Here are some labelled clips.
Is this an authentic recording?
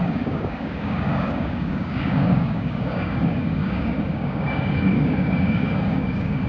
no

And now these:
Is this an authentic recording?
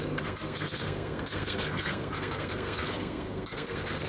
no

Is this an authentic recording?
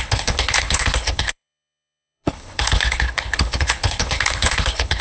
no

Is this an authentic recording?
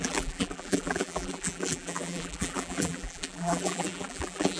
no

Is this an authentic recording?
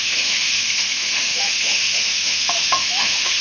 no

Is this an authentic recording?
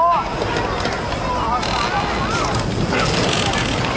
yes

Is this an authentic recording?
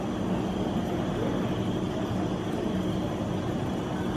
yes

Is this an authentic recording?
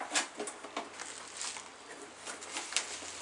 yes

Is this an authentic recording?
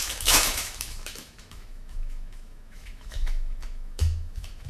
no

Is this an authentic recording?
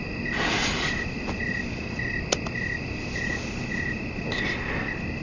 yes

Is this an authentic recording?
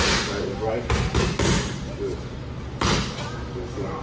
yes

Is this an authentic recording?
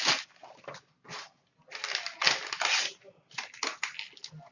yes